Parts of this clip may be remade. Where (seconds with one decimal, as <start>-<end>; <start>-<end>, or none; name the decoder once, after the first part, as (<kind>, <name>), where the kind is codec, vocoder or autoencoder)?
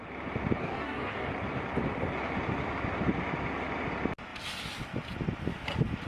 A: 0.6-1.3 (codec, DAC)